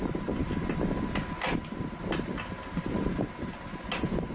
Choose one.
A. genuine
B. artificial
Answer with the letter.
A